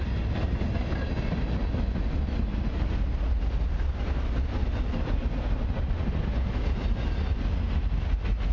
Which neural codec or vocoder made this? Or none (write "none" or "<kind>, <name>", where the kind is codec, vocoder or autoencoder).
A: none